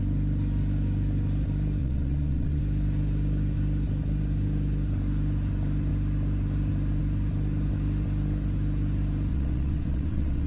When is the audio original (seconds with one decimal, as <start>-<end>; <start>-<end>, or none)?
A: 0.0-1.8; 2.6-9.3